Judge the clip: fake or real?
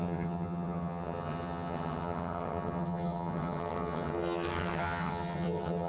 fake